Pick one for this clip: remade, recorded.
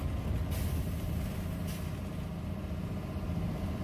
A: recorded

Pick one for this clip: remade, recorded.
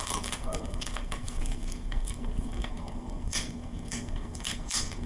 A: remade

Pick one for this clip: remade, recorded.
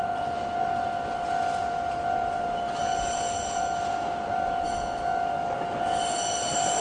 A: recorded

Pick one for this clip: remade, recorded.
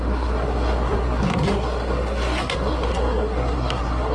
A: remade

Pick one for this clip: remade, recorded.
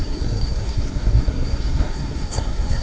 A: remade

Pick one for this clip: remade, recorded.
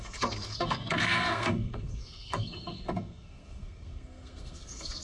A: remade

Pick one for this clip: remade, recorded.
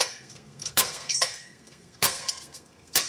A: remade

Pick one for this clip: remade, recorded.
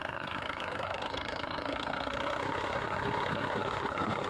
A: remade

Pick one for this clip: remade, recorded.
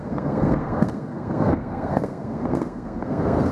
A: remade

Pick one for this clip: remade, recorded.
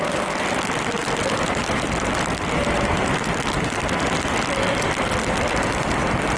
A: recorded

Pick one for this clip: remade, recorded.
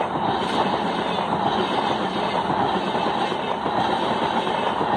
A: recorded